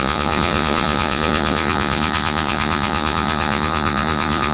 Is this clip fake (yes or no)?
yes